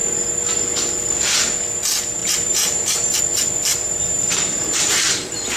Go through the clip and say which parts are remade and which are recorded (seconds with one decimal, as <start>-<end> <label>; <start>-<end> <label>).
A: 0.0-2.2 recorded; 2.2-3.2 remade; 3.2-3.7 recorded; 3.7-5.6 remade